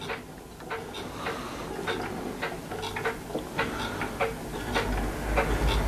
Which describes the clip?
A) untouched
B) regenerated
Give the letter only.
A